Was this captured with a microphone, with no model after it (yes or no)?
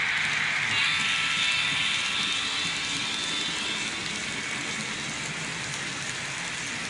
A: yes